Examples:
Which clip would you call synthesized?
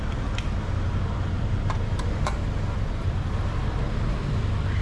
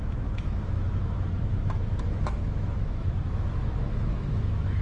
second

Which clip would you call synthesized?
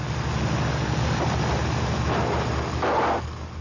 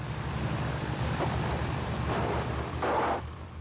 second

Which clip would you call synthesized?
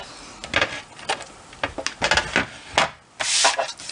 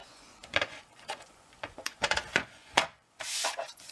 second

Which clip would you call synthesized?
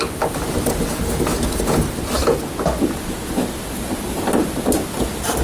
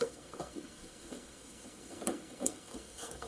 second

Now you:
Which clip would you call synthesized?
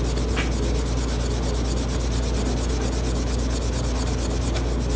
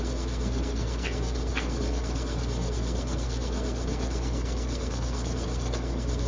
second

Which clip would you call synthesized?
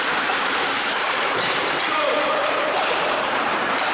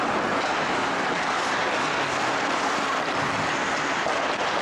first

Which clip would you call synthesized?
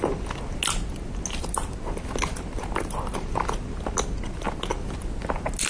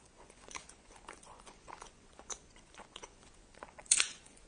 second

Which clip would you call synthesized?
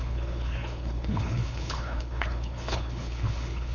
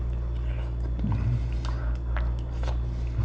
first